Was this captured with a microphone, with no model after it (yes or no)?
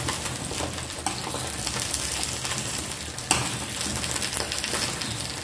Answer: yes